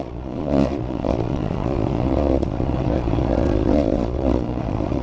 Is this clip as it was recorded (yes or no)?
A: no